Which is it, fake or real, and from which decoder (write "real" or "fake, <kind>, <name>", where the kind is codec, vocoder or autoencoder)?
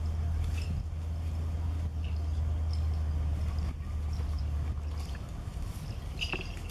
real